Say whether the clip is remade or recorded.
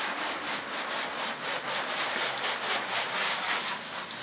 recorded